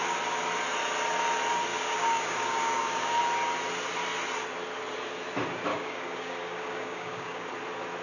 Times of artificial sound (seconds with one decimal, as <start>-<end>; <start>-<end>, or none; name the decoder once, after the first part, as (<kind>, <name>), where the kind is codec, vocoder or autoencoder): 1.7-3.2 (codec, DAC); 5.7-7.5